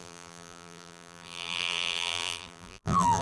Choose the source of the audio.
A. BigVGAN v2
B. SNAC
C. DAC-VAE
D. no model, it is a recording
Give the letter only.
A